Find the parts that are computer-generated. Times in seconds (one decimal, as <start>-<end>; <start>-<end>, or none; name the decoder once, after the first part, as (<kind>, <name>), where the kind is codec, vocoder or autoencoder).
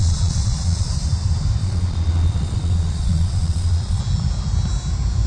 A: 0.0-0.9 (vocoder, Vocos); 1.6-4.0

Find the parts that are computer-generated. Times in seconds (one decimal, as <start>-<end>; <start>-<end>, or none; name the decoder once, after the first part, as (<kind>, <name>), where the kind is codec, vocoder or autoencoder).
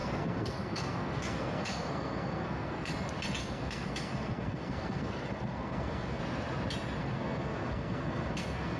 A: 0.0-2.9 (codec, SNAC); 3.4-6.2; 7.0-8.8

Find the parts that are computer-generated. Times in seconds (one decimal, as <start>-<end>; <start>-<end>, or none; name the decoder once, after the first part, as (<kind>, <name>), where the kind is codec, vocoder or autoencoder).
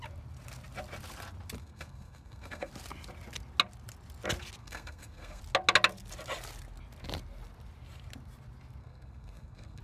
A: 1.6-2.7 (codec, SNAC); 4.6-5.4; 8.8-9.8